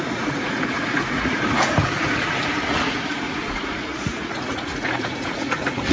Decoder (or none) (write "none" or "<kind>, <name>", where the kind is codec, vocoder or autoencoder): vocoder, Vocos